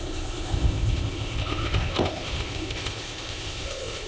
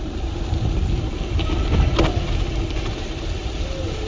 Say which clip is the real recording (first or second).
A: second